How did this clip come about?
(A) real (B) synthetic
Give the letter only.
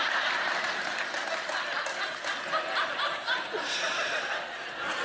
A